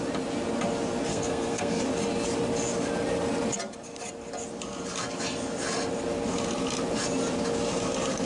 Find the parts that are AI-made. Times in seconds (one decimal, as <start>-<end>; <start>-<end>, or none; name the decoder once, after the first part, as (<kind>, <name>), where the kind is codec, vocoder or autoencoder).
1.1-1.8 (codec, SNAC)